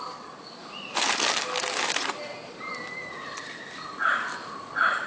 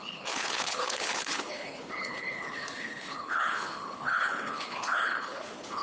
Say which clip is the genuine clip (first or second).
first